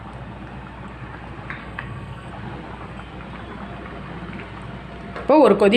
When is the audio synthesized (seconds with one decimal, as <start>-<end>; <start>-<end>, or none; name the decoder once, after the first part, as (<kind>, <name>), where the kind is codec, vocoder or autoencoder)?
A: 1.6-2.3 (codec, SNAC)